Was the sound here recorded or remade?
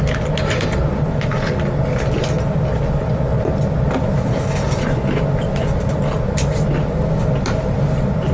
recorded